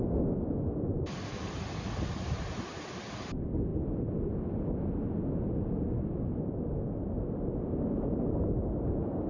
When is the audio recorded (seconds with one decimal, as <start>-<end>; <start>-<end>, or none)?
0.0-9.3